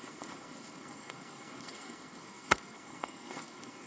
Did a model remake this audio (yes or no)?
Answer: yes